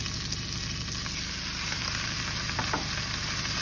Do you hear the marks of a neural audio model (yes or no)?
no